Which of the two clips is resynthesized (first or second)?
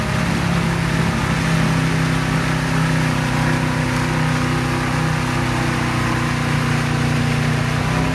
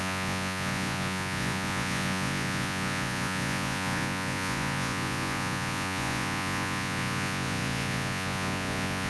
second